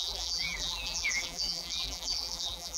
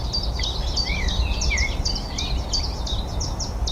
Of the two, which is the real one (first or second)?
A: second